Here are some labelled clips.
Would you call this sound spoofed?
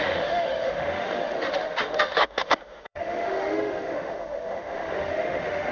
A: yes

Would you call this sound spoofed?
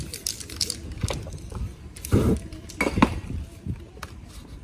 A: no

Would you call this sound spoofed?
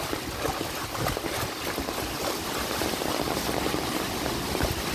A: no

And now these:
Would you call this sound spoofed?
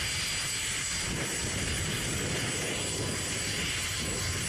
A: no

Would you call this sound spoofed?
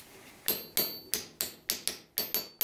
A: no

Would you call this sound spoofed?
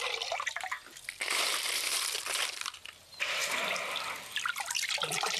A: yes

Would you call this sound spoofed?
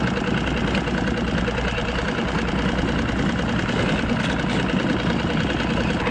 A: no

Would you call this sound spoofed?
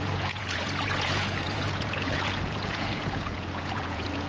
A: yes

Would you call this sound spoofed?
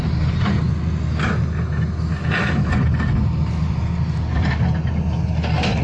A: no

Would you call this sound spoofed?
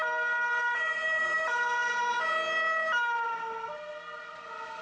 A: no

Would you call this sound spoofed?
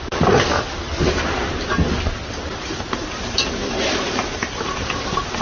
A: no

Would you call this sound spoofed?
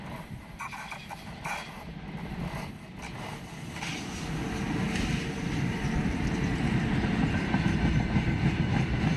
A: no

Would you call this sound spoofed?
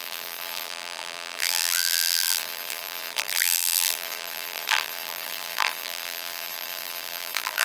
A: yes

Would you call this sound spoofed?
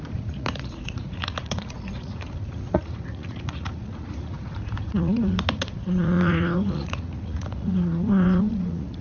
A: yes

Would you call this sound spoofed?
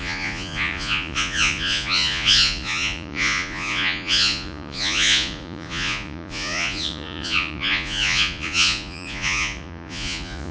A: yes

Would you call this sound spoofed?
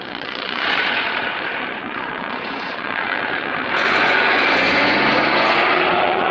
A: yes